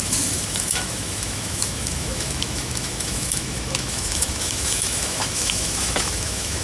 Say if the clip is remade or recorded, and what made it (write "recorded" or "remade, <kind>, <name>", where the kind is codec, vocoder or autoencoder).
remade, autoencoder, DAC-VAE